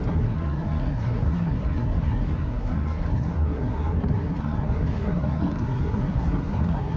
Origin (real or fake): fake